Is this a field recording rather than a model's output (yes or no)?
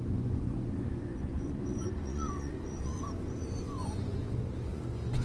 no